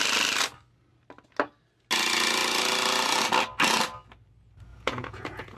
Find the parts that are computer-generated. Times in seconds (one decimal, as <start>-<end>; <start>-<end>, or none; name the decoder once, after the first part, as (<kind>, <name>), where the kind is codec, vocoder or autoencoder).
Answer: 4.7-5.6 (vocoder, Vocos)